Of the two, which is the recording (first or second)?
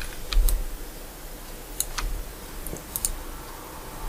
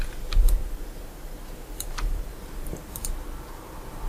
first